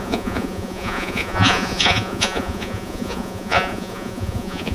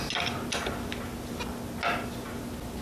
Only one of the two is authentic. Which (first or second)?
second